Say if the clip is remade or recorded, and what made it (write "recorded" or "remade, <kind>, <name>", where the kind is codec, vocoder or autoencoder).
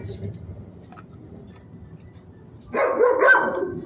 recorded